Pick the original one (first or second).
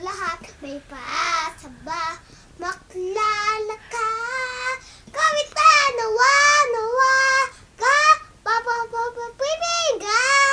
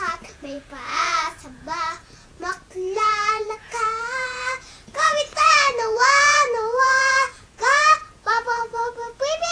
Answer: first